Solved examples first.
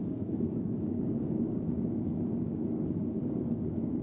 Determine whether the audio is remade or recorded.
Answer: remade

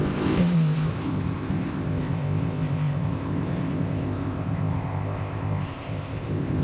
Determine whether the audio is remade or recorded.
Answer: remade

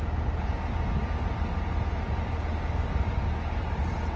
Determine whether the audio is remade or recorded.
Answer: recorded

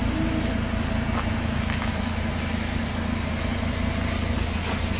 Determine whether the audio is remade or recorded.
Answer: recorded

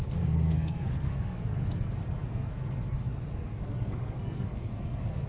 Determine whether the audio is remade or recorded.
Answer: remade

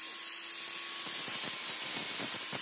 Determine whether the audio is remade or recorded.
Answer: recorded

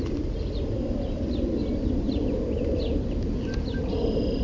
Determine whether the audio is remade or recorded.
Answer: recorded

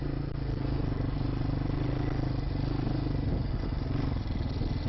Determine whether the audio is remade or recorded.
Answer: recorded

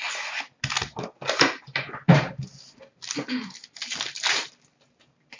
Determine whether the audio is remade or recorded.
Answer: recorded